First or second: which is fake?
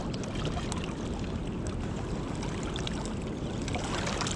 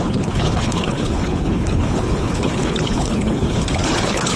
second